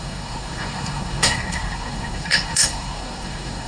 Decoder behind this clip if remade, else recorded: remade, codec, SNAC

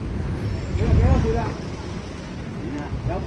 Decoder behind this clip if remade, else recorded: recorded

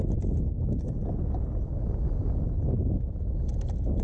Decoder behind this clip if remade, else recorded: recorded